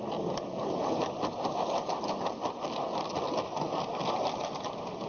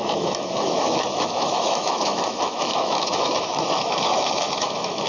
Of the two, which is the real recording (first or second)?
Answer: first